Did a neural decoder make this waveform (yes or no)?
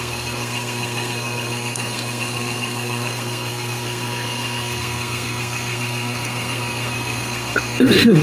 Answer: yes